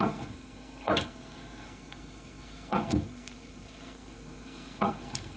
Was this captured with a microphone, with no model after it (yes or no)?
no